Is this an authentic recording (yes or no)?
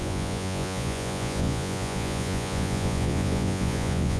no